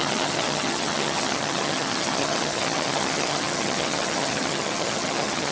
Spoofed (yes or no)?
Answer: yes